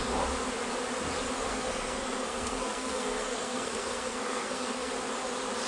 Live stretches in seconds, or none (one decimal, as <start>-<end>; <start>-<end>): 0.0-1.5; 4.9-5.7